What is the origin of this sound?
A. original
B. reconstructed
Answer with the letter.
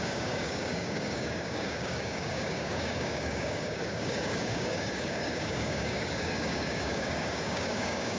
B